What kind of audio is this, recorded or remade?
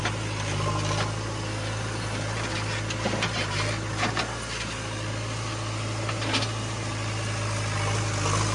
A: recorded